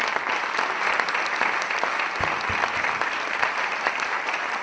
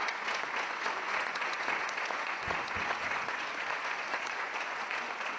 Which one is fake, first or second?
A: second